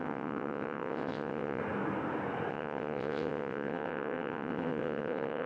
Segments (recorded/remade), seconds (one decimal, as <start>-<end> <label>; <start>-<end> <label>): 0.0-1.6 remade; 1.6-2.5 recorded; 2.5-5.5 remade